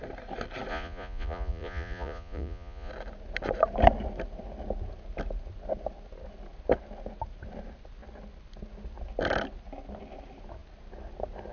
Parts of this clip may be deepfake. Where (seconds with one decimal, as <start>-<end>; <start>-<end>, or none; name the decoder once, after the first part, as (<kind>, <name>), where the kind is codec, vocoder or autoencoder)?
0.7-2.9 (vocoder, Vocos)